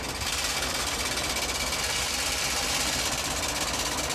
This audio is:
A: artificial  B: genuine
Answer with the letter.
B